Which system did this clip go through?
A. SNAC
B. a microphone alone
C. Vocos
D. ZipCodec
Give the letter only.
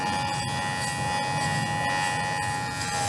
B